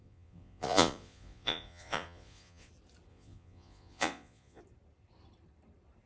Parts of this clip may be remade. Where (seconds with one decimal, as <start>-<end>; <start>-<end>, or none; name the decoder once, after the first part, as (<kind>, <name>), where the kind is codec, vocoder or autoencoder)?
0.0-2.7 (vocoder, Vocos); 3.1-4.6